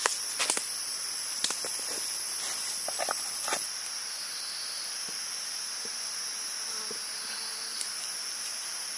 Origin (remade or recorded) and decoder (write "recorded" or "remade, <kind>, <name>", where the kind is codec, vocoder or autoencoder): recorded